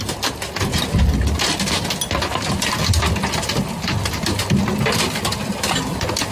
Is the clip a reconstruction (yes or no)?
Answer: no